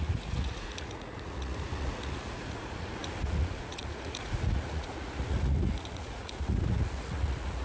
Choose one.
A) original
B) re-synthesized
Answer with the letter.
B